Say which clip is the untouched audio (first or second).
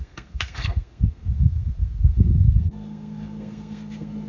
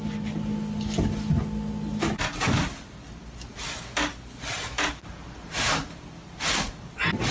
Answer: second